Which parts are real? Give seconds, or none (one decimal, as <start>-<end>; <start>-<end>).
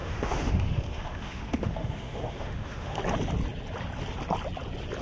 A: 3.0-5.0